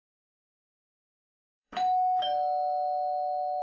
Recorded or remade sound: remade